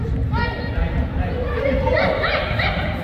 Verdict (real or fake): real